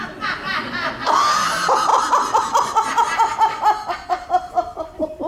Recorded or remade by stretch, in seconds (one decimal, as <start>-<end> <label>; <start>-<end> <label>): 0.0-5.3 recorded